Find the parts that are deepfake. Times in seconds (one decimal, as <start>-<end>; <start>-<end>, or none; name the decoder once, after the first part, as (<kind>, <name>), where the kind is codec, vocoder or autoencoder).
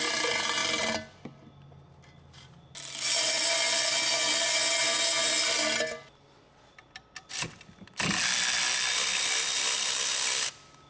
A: none